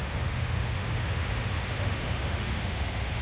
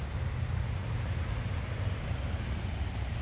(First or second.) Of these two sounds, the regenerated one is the first